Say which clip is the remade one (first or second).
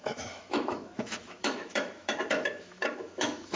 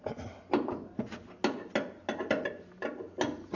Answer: first